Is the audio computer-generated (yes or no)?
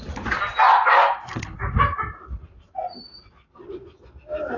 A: no